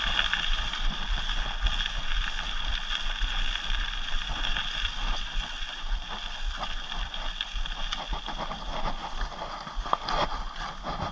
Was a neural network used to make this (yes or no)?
no